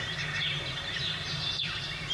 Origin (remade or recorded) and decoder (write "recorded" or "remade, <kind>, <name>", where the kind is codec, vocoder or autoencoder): remade, vocoder, BigVGAN v2